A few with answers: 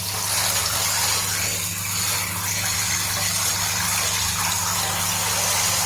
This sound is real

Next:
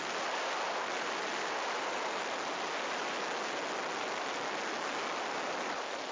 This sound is real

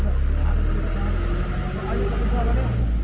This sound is real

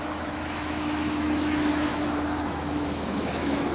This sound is fake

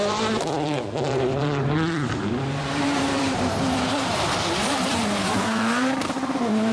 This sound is fake